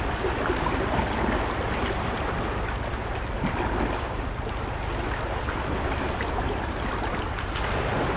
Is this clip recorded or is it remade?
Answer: recorded